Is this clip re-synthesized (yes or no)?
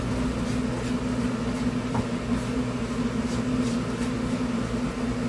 no